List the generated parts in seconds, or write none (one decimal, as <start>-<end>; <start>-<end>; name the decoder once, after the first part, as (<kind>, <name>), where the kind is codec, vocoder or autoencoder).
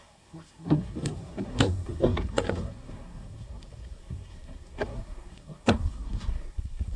0.0-7.0 (codec, SNAC)